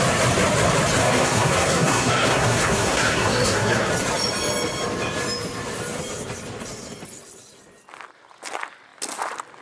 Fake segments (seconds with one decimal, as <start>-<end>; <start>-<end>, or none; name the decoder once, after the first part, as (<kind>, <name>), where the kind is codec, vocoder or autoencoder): 1.0-3.9 (codec, SNAC)

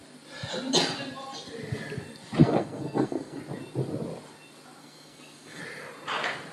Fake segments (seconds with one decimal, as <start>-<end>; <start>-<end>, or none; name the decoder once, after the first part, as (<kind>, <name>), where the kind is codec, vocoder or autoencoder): 2.4-3.4 (codec, SNAC); 4.8-5.6

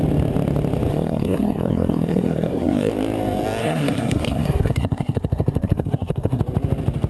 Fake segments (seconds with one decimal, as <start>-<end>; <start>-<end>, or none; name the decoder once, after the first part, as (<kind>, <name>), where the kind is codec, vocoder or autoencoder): 0.9-2.9 (codec, SNAC); 3.6-6.4

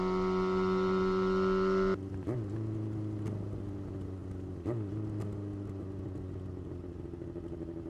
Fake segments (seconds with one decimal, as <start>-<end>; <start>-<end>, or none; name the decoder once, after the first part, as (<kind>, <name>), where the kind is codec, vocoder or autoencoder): none

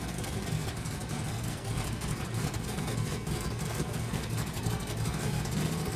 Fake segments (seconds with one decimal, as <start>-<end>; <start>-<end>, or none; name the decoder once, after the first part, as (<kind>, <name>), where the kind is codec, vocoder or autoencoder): 0.0-6.0 (codec, SNAC)

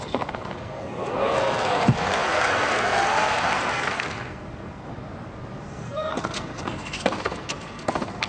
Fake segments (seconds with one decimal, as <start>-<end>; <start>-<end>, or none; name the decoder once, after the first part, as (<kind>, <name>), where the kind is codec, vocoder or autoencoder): 0.0-4.9 (codec, SNAC); 5.6-8.3